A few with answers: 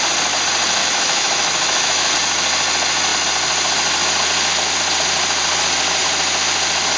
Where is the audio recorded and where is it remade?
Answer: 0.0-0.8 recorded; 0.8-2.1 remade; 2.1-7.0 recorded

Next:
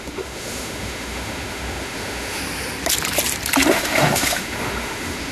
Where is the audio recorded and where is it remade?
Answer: 0.0-2.4 remade; 2.4-3.7 recorded; 3.7-5.3 remade

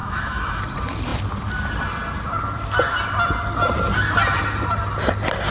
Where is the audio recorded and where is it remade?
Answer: 0.0-0.6 remade; 0.6-5.5 recorded

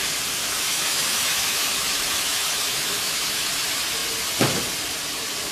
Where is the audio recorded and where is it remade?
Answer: 0.0-0.4 recorded; 0.4-3.5 remade; 3.5-5.5 recorded

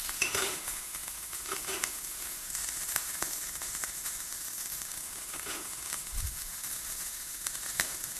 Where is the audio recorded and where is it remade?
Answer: 0.0-8.2 remade